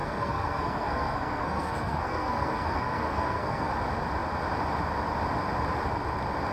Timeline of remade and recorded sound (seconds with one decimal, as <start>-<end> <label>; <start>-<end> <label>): 0.0-3.7 remade; 3.7-6.5 recorded